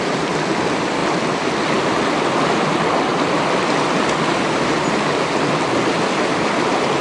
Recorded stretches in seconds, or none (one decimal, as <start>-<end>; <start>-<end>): 0.0-3.1; 4.0-7.0